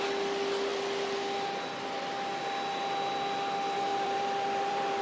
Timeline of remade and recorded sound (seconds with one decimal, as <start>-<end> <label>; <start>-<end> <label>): 0.0-3.9 recorded; 3.9-5.0 remade